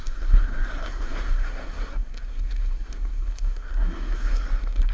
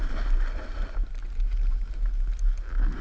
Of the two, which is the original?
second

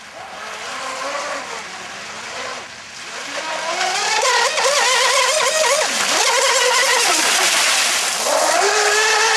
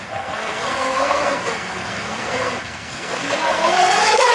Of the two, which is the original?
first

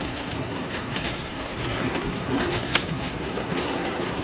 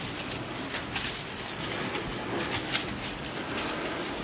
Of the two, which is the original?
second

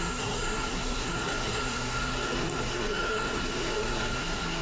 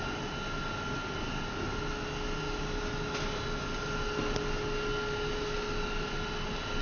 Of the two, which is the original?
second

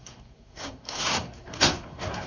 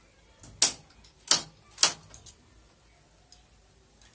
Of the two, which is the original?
second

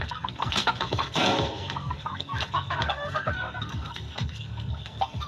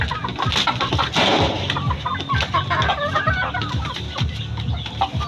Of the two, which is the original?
second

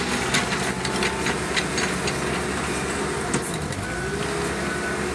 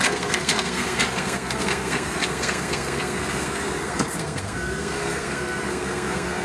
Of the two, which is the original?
first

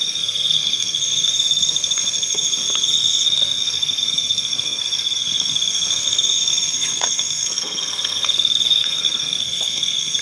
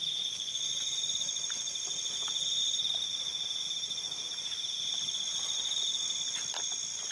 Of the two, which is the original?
second